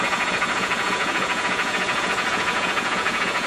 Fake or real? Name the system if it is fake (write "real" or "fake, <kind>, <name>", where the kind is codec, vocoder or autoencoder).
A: fake, vocoder, Vocos